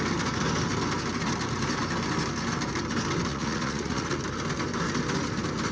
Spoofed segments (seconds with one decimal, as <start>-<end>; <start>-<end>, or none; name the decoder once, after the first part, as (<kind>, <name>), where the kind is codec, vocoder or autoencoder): 3.3-4.2 (vocoder, Vocos)